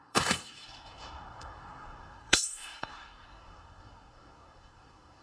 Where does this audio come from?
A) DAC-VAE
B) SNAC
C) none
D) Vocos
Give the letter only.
B